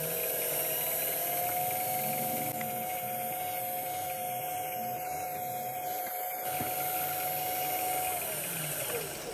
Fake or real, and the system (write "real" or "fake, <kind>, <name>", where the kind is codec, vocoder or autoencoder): real